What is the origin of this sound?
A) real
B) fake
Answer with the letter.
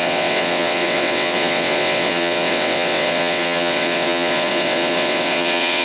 B